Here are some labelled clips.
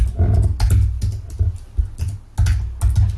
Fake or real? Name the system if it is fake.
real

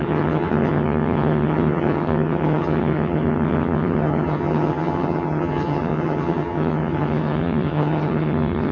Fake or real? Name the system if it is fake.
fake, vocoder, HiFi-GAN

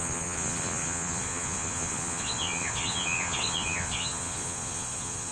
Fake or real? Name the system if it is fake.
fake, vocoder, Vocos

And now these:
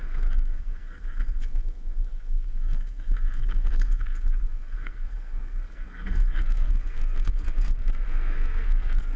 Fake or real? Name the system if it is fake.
fake, codec, SNAC